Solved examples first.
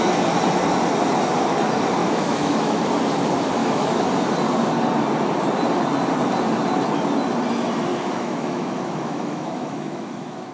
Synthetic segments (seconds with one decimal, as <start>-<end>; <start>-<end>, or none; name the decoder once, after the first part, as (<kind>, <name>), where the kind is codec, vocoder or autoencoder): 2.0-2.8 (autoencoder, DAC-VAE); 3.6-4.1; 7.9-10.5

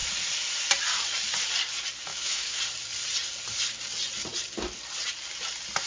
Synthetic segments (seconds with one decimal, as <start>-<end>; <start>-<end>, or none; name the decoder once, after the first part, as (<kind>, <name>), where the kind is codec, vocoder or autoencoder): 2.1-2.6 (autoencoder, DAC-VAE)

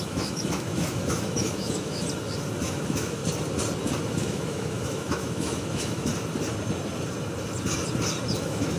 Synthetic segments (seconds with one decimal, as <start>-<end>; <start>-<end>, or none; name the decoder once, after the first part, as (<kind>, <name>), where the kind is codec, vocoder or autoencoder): 0.0-2.0 (autoencoder, DAC-VAE); 2.6-3.2; 4.0-6.1; 8.4-8.8